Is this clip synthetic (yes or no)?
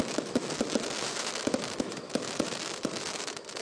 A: yes